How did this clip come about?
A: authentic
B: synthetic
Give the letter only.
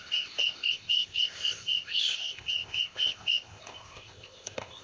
B